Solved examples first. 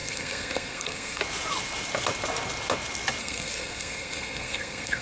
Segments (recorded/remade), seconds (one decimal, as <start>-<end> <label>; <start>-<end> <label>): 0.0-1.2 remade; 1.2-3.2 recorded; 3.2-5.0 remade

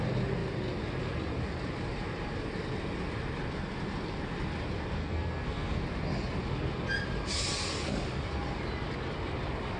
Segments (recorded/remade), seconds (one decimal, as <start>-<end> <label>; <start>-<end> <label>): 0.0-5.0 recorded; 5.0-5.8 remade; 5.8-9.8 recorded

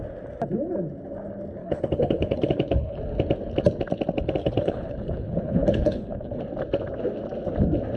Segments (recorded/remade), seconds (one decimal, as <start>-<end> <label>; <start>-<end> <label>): 0.0-1.6 recorded; 1.6-3.0 remade; 3.0-4.4 recorded; 4.4-6.4 remade; 6.4-8.0 recorded